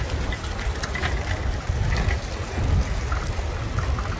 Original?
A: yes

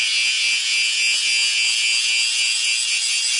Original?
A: yes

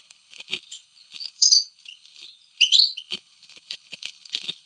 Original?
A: no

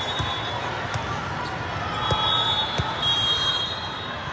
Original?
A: yes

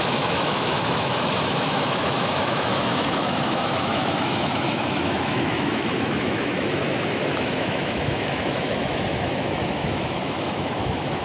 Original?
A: no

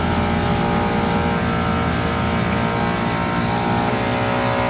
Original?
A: yes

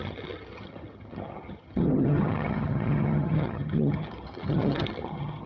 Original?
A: no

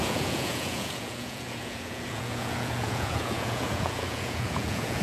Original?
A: no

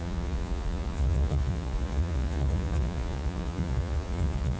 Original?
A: no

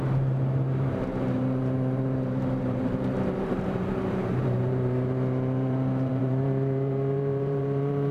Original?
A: no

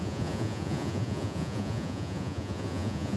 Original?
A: no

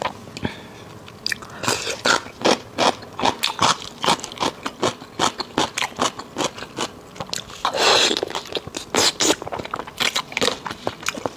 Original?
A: yes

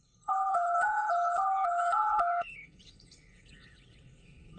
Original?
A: no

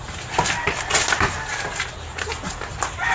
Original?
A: yes